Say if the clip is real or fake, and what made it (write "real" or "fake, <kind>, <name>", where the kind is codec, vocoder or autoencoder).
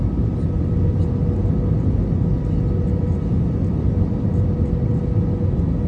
real